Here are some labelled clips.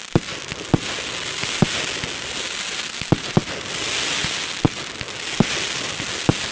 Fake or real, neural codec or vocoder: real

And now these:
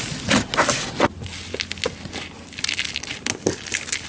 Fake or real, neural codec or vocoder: real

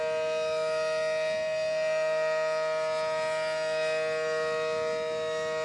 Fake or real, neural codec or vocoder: real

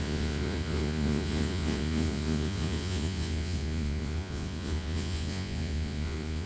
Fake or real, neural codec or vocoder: fake, vocoder, Vocos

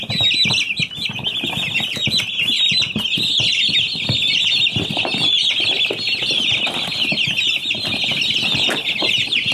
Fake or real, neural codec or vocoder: real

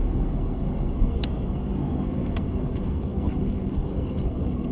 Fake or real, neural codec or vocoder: fake, codec, SNAC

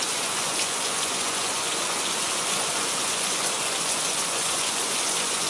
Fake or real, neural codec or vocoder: fake, vocoder, Vocos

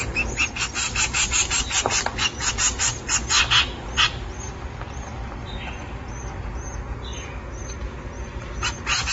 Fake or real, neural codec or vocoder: real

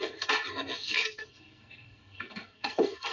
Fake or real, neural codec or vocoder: fake, codec, SNAC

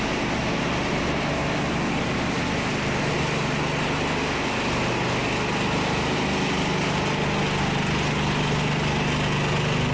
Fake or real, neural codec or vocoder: real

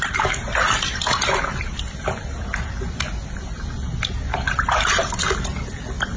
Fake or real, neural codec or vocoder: real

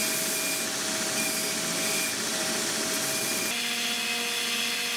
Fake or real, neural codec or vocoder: real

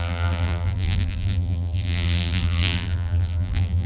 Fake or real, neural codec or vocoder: fake, vocoder, BigVGAN v2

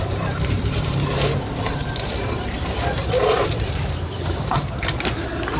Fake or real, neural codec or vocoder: fake, vocoder, BigVGAN v2